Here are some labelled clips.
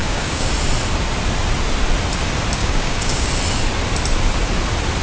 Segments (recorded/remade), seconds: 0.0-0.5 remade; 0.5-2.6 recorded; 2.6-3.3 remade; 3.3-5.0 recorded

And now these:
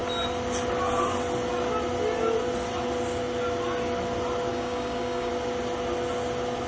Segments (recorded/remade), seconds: 0.0-4.5 recorded; 4.5-5.3 remade; 5.3-6.7 recorded